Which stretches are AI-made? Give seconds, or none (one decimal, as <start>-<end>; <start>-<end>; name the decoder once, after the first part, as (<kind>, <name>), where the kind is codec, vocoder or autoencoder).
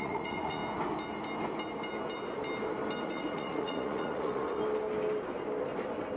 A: 0.0-0.6 (vocoder, Vocos); 3.0-4.6